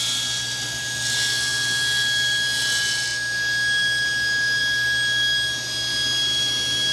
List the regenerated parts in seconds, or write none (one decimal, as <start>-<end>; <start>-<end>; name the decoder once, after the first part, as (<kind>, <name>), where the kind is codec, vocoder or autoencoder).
none